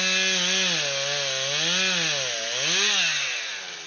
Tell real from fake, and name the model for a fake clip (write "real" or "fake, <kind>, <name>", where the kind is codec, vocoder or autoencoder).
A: real